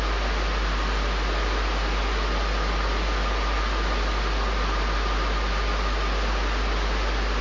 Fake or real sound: real